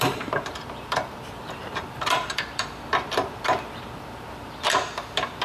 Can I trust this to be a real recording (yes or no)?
no